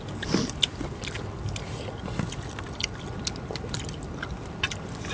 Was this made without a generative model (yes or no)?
yes